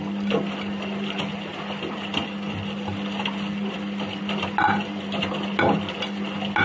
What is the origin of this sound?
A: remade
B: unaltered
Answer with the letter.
B